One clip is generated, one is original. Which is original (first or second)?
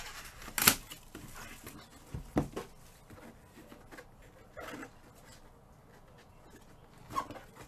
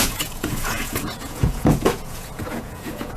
first